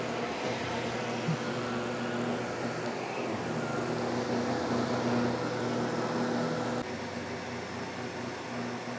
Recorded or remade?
recorded